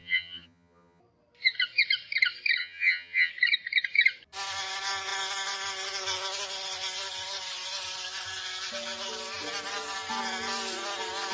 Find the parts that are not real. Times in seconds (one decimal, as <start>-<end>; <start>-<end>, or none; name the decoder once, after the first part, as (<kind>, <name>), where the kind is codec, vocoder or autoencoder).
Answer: 0.0-1.0 (vocoder, HiFi-GAN); 2.6-3.3